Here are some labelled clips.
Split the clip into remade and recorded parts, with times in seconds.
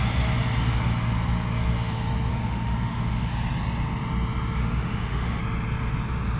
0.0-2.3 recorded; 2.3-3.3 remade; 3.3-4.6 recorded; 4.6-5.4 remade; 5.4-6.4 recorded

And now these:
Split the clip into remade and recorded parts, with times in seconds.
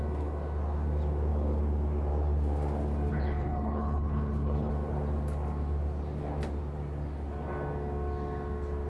0.0-3.1 recorded; 3.1-4.7 remade; 4.7-8.9 recorded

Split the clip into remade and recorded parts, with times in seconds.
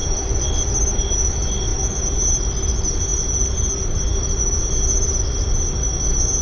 0.0-6.4 recorded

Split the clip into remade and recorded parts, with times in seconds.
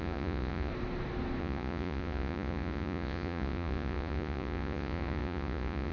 0.0-0.7 remade; 0.7-1.4 recorded; 1.4-5.9 remade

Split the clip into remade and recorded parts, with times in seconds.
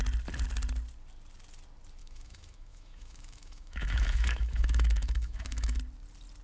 0.0-2.0 recorded; 2.0-5.8 remade; 5.8-6.4 recorded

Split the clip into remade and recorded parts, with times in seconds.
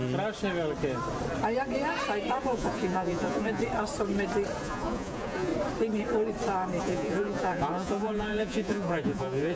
0.0-2.4 recorded; 2.4-3.6 remade; 3.6-4.6 recorded; 4.6-5.5 remade; 5.5-6.8 recorded; 6.8-9.6 remade